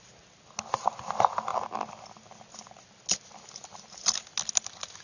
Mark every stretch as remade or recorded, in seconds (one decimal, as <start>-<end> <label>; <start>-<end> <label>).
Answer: 0.0-5.0 recorded

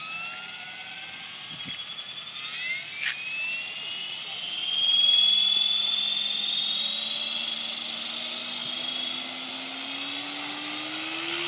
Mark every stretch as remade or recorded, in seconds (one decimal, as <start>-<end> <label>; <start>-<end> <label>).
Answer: 0.0-11.5 recorded

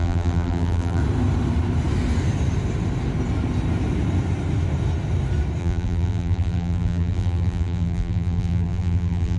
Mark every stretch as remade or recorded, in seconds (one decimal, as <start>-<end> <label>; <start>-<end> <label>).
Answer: 0.0-1.0 remade; 1.0-5.6 recorded; 5.6-9.4 remade

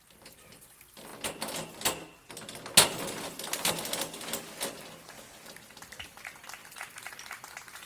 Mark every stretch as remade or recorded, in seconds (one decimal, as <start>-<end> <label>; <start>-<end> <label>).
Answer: 0.0-6.6 recorded; 6.6-7.1 remade; 7.1-7.9 recorded

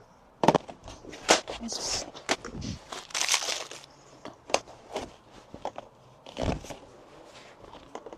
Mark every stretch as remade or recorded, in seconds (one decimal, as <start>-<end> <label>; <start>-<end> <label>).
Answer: 0.0-0.8 recorded; 0.8-2.1 remade; 2.1-3.1 recorded; 3.1-6.8 remade; 6.8-8.2 recorded

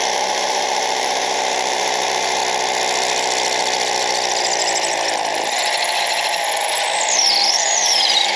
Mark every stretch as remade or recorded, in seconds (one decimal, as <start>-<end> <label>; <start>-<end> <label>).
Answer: 0.0-2.4 remade; 2.4-7.4 recorded; 7.4-8.4 remade

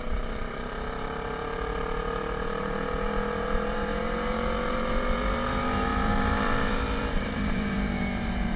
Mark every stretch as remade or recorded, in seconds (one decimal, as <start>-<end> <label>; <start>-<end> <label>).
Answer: 0.0-8.6 remade